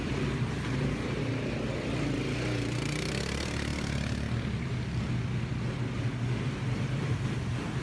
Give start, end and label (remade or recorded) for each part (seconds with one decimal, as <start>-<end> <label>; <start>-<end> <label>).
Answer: 0.0-7.8 recorded